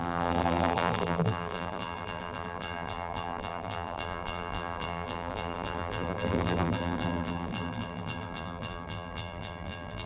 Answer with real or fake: fake